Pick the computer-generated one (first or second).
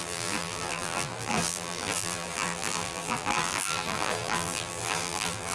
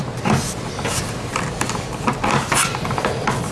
first